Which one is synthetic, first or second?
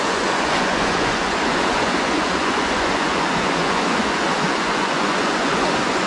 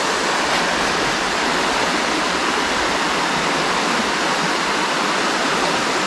first